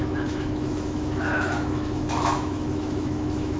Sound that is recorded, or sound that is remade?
remade